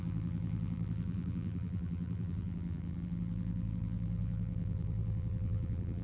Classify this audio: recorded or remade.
remade